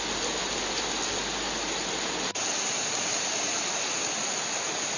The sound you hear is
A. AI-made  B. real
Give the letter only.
B